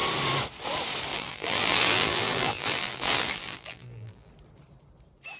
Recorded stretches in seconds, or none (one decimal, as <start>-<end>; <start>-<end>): 0.0-1.1; 4.3-5.4